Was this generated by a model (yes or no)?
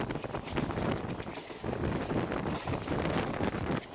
no